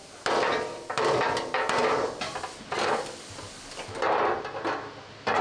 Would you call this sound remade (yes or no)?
no